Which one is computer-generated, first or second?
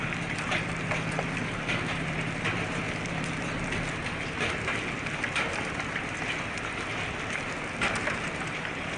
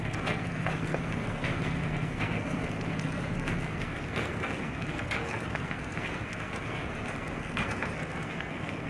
second